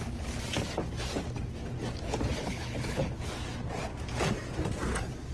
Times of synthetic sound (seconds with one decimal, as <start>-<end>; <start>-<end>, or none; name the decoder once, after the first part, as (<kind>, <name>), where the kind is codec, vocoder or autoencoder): 2.4-3.3 (codec, HILCodec)